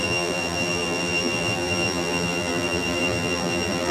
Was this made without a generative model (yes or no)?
no